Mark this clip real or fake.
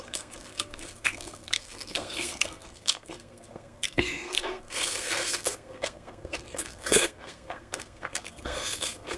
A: fake